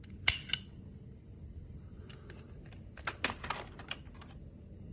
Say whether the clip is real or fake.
real